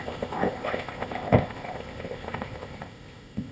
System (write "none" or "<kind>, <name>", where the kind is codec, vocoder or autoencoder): codec, ZipCodec